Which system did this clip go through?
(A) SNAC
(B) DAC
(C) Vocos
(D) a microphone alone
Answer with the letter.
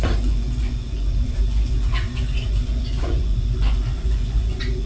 C